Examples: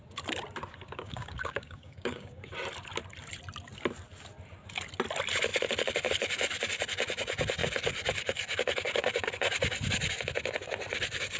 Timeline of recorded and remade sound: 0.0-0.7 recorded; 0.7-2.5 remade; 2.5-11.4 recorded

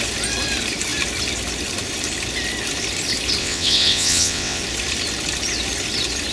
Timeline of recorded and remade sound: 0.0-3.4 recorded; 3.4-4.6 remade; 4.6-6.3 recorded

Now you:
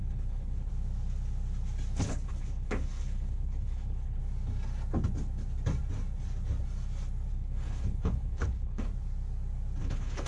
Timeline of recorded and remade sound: 0.0-0.7 remade; 0.7-2.0 recorded; 2.0-4.2 remade; 4.2-7.3 recorded; 7.3-8.9 remade; 8.9-9.8 recorded; 9.8-10.3 remade

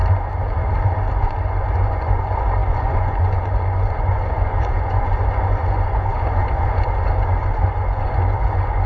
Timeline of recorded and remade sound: 0.0-1.1 recorded; 1.1-8.9 remade

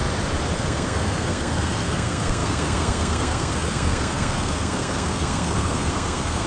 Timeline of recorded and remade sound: 0.0-0.6 recorded; 0.6-6.5 remade

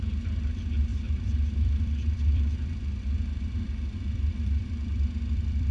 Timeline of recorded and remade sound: 0.0-5.7 remade

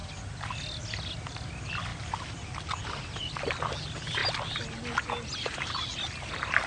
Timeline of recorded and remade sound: 0.0-6.7 recorded